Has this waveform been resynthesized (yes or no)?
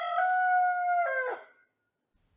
no